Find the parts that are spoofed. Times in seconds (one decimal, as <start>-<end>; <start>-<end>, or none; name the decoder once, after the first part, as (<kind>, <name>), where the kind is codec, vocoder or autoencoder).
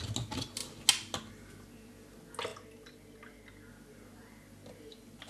none